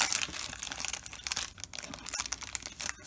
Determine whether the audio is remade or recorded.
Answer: recorded